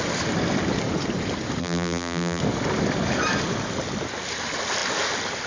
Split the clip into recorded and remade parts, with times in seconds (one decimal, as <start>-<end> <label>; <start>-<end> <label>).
0.0-1.6 recorded; 1.6-2.4 remade; 2.4-5.5 recorded